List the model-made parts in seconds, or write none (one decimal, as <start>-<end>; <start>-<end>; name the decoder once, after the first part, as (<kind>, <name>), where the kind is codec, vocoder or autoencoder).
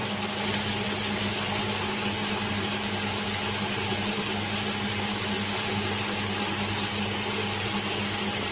none